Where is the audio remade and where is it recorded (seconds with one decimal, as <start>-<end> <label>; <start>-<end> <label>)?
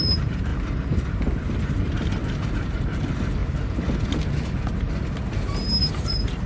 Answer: 0.0-0.5 remade; 0.5-1.6 recorded; 1.6-3.4 remade; 3.4-5.9 recorded; 5.9-6.5 remade